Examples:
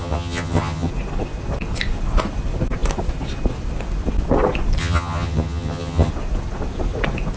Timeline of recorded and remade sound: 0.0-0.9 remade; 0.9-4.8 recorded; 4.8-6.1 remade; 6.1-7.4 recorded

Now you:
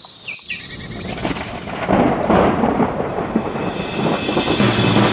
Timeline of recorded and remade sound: 0.0-5.1 recorded

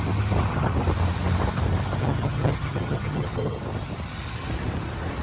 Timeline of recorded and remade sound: 0.0-2.0 recorded; 2.0-3.6 remade; 3.6-5.2 recorded

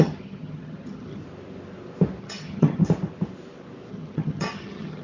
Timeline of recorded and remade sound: 0.0-1.2 remade; 1.2-2.2 recorded; 2.2-2.8 remade; 2.8-3.9 recorded; 3.9-5.0 remade

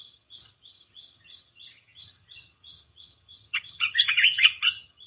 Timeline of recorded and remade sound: 0.0-5.1 remade